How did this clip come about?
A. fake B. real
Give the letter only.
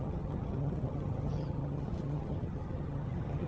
A